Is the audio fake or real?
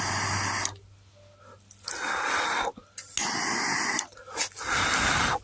real